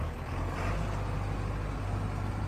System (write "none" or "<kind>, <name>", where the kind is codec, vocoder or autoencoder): none